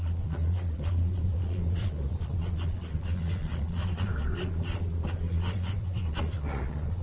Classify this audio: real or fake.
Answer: fake